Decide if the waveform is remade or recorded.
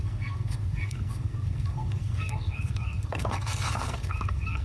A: remade